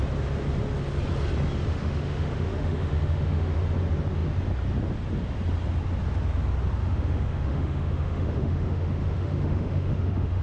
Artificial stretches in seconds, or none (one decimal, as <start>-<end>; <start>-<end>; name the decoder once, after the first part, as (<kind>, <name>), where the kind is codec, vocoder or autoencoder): 1.7-3.6 (autoencoder, DAC-VAE); 6.8-10.4